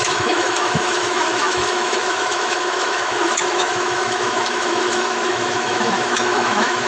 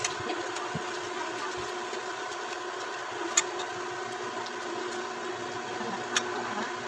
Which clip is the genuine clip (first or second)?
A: second